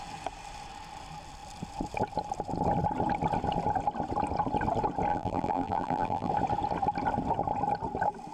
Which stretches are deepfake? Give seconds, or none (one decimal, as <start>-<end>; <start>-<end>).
5.1-6.3